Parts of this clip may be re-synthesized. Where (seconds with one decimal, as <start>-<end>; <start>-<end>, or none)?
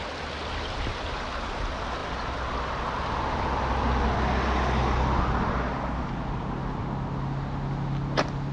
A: none